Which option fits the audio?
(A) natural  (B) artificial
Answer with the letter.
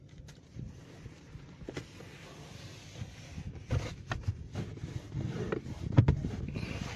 A